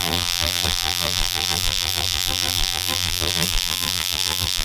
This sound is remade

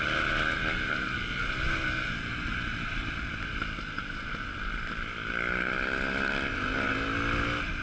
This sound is recorded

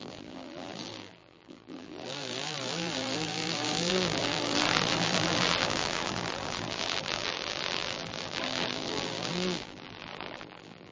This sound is remade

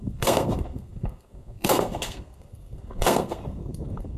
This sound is remade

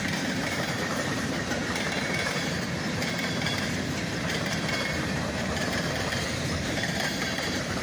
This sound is remade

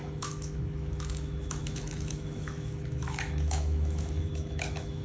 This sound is remade